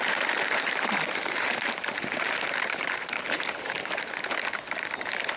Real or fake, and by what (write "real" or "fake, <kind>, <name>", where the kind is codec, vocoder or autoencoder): fake, vocoder, BigVGAN v2